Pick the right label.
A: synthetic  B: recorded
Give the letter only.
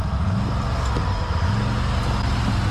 B